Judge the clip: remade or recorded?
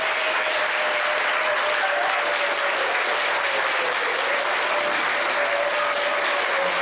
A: recorded